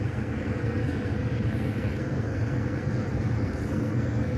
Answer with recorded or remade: remade